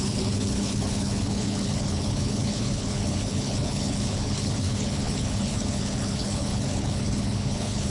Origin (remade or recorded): remade